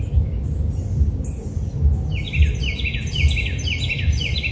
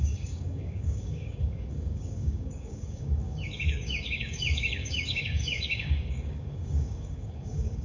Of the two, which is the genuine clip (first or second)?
first